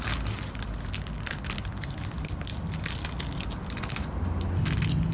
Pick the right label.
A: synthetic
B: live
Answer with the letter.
B